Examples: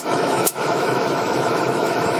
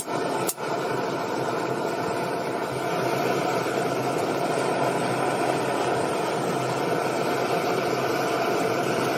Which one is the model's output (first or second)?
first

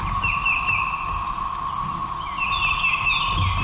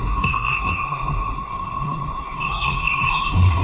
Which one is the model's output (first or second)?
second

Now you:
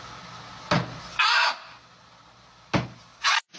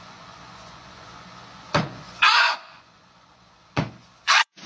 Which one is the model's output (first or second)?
second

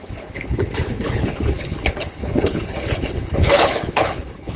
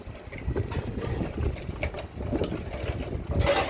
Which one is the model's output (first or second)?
first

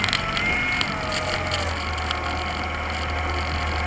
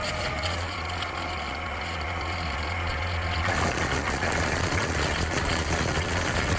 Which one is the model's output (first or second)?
second